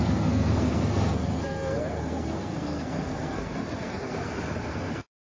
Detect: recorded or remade remade